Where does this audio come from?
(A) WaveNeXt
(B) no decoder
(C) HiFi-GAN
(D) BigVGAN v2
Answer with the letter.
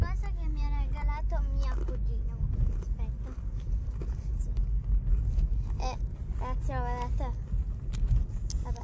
B